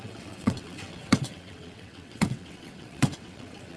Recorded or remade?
remade